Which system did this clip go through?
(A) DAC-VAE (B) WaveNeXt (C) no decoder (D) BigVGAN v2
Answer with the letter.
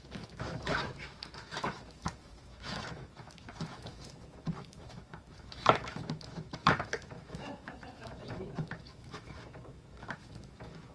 A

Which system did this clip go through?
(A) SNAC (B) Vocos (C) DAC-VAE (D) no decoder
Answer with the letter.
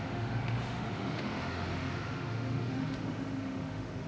C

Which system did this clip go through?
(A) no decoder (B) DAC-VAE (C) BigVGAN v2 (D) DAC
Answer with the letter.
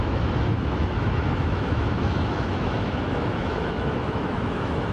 B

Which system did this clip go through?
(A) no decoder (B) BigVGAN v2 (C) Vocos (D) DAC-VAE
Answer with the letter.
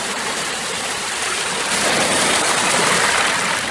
A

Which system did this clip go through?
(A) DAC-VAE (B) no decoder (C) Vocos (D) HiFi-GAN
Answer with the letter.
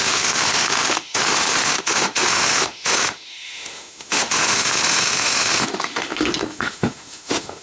A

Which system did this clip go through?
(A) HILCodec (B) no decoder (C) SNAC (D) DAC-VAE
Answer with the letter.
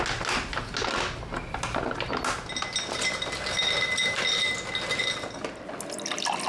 B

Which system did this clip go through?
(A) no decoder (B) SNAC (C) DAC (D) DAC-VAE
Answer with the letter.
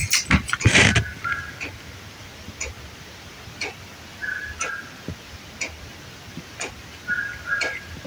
A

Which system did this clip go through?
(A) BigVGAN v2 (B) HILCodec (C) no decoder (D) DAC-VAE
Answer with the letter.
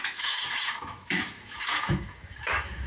D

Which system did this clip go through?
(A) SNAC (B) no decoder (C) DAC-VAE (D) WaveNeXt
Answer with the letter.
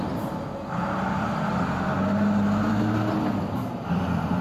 B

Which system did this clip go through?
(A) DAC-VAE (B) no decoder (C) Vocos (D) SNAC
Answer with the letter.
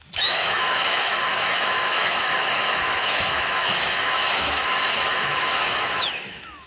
A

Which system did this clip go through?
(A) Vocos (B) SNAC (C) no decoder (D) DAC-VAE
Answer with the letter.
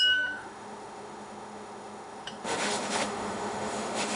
D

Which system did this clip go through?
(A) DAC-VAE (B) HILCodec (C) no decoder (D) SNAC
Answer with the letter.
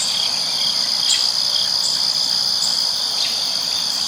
C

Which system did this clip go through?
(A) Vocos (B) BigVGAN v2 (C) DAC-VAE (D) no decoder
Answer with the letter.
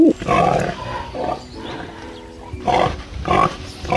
D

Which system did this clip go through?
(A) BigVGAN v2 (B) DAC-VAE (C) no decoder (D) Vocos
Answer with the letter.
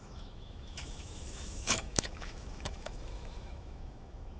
B